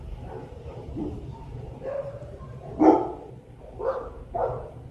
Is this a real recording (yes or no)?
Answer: no